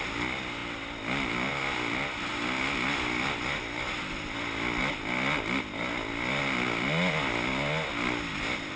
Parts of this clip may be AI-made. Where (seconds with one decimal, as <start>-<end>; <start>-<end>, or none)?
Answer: none